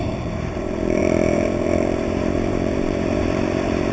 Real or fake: fake